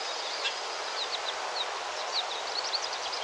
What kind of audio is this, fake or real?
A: real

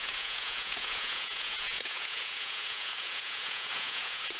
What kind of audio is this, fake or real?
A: fake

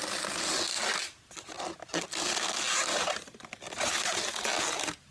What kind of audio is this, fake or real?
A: real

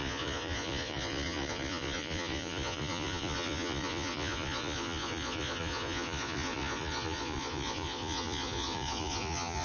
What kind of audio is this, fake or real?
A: fake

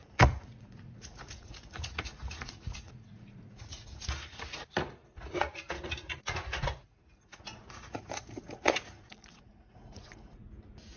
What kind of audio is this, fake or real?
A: fake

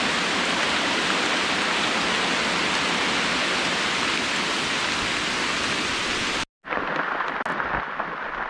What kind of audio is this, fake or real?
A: real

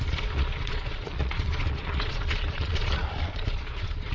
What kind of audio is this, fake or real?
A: fake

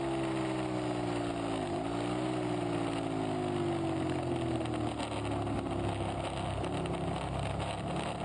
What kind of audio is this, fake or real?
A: real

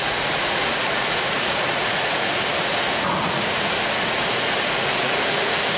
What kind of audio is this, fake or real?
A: fake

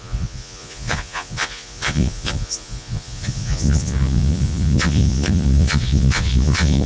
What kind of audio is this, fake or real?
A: fake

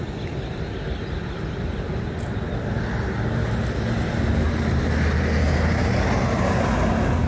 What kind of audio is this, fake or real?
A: real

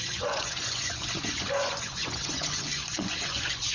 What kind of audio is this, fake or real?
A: fake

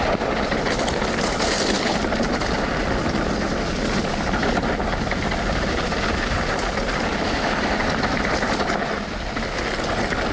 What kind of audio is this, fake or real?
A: real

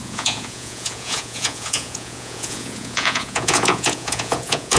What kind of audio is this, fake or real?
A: fake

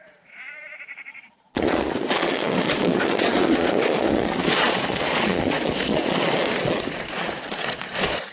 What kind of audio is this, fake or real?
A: fake